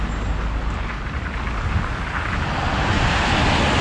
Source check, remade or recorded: recorded